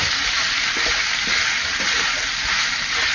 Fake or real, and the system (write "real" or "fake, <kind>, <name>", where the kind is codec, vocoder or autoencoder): real